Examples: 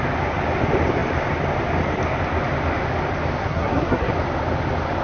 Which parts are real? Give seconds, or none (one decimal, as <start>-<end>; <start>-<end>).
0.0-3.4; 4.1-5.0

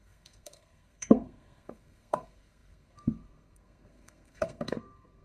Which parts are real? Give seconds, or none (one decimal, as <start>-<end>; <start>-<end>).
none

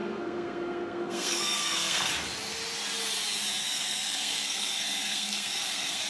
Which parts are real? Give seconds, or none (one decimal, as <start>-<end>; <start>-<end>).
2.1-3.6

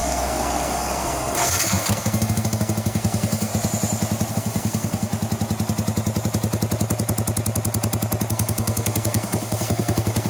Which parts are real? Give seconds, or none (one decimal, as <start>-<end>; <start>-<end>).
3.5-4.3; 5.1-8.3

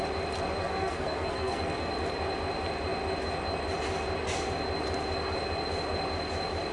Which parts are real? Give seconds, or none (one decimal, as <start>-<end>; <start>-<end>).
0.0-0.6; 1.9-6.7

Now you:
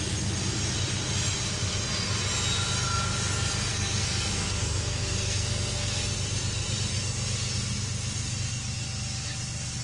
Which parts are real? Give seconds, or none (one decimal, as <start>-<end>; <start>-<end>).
0.0-3.7; 6.0-9.8